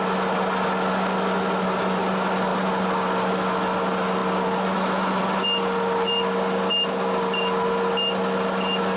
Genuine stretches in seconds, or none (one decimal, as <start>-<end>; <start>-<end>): 0.0-9.0